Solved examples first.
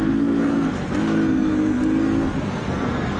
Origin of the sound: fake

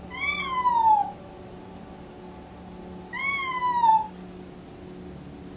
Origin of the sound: real